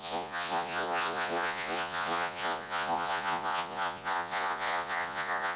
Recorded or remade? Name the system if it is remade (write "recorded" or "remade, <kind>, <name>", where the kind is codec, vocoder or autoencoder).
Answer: remade, vocoder, Vocos